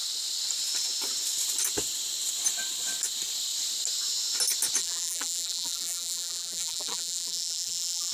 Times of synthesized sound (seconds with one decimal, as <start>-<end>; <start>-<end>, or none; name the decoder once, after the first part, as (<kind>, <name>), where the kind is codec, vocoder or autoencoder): 4.8-8.1 (vocoder, BigVGAN v2)